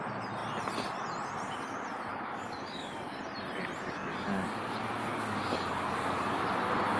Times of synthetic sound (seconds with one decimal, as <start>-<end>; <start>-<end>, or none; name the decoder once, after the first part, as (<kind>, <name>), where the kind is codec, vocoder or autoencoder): 2.1-3.2 (codec, DAC); 4.1-6.4